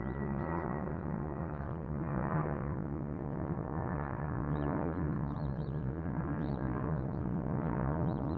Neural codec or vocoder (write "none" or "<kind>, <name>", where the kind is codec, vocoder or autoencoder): vocoder, Vocos